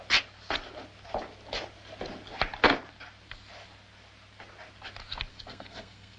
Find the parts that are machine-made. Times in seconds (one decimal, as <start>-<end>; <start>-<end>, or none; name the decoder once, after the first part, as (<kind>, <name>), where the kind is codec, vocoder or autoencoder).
5.3-6.2 (codec, SNAC)